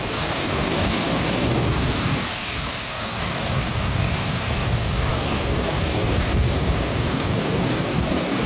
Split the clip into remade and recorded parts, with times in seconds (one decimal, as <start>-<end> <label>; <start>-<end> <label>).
0.0-8.5 remade